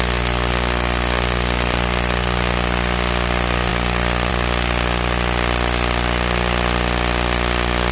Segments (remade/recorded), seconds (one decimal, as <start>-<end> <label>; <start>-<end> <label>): 0.0-7.9 recorded